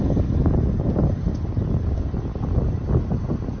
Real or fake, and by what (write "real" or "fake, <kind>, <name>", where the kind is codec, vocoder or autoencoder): real